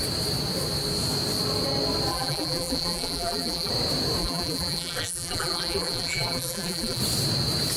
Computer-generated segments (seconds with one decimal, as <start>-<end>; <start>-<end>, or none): 2.1-3.7; 4.2-7.0